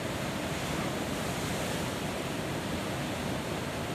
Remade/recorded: recorded